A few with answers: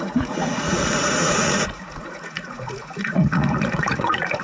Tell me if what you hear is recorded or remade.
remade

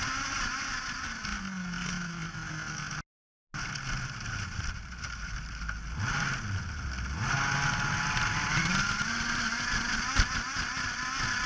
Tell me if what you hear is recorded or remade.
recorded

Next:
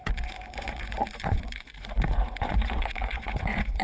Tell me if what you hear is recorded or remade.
remade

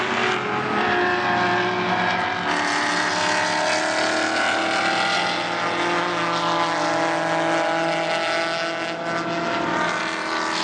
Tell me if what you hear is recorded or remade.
recorded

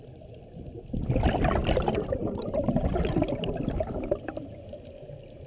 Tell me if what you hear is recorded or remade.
recorded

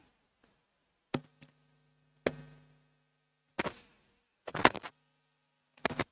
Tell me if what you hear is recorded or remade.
recorded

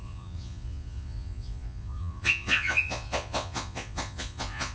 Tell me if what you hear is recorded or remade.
remade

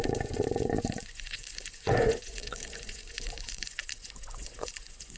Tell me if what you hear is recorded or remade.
remade